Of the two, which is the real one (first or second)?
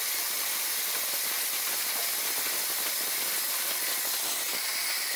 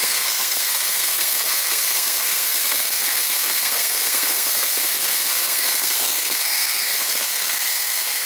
first